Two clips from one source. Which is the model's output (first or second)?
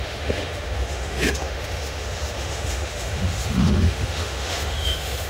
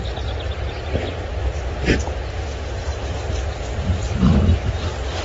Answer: first